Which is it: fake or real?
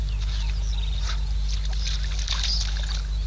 real